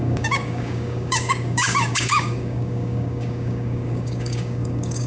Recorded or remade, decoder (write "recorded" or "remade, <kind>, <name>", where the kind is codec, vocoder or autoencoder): remade, codec, DAC